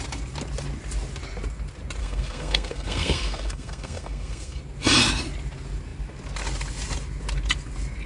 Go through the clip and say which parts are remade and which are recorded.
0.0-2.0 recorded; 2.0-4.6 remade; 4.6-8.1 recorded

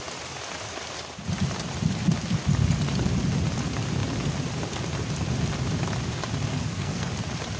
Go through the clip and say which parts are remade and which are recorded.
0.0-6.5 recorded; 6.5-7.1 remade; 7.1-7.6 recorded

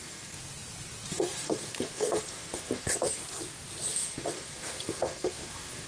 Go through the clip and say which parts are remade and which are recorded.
0.0-0.4 remade; 0.4-1.1 recorded; 1.1-3.2 remade; 3.2-3.9 recorded; 3.9-5.9 remade

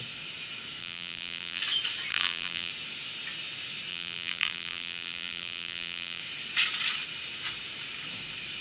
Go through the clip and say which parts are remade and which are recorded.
0.0-0.8 recorded; 0.8-1.6 remade; 1.6-2.1 recorded; 2.1-2.7 remade; 2.7-3.9 recorded; 3.9-6.2 remade; 6.2-8.6 recorded

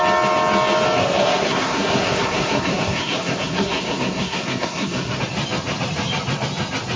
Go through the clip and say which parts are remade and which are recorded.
0.0-1.0 recorded; 1.0-5.2 remade; 5.2-7.0 recorded

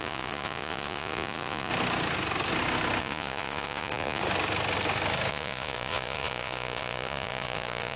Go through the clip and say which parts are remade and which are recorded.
0.0-1.7 remade; 1.7-3.0 recorded; 3.0-4.2 remade; 4.2-5.3 recorded; 5.3-8.0 remade

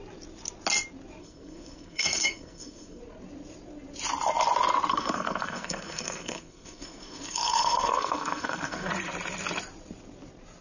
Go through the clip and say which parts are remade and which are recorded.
0.0-1.2 recorded; 1.2-3.0 remade; 3.0-4.9 recorded; 4.9-8.9 remade; 8.9-10.6 recorded